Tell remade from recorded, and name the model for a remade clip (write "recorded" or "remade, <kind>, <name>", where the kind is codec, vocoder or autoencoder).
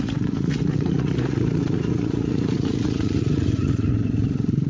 remade, vocoder, Vocos